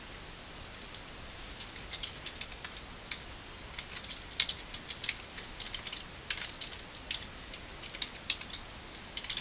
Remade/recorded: recorded